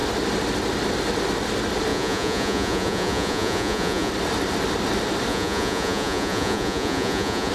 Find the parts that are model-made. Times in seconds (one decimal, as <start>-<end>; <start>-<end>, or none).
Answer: 1.9-4.1; 5.3-7.5